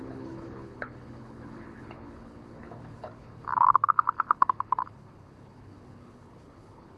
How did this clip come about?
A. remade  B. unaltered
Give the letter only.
A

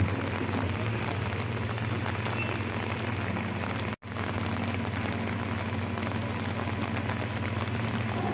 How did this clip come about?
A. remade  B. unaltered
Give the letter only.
B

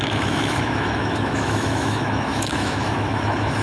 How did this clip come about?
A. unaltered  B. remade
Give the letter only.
B